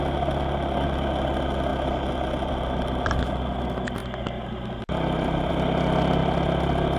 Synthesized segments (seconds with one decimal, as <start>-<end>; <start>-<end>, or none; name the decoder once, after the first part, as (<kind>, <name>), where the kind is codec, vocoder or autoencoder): none